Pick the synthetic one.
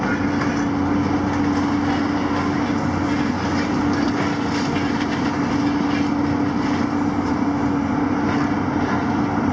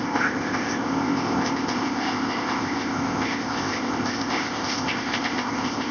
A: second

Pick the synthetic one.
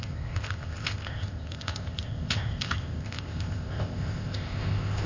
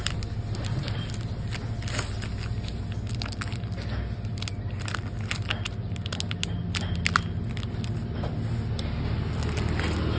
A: first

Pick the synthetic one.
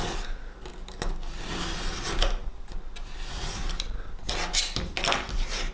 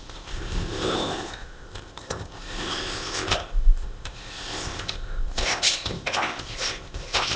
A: second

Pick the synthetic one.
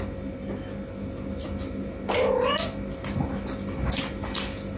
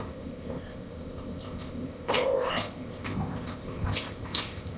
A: second